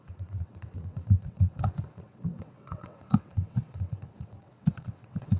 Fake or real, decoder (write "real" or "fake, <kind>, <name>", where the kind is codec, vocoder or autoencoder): fake, vocoder, WaveNeXt